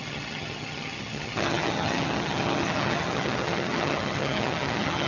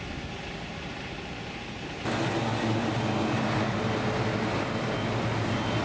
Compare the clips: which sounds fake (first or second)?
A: first